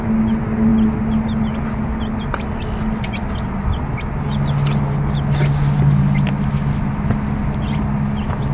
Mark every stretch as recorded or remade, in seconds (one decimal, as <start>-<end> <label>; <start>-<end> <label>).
0.0-8.5 recorded